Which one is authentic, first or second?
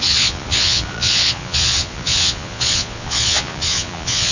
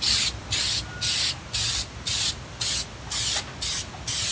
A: second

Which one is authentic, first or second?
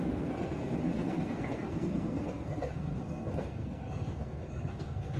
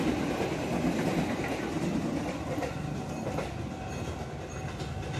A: second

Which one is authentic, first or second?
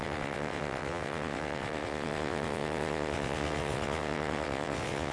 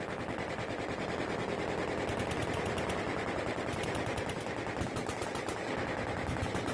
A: second